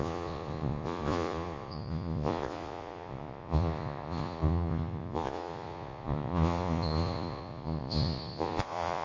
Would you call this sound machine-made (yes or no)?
yes